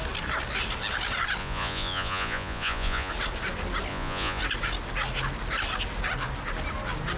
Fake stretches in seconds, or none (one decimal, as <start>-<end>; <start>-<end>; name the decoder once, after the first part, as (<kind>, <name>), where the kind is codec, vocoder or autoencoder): 1.4-3.1 (vocoder, Vocos); 3.9-4.4